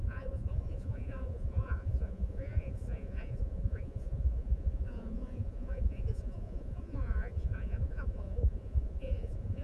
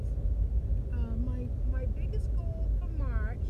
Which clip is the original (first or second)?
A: second